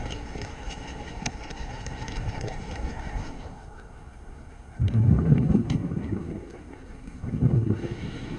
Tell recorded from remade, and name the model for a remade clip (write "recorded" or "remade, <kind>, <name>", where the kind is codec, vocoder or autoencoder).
remade, codec, SNAC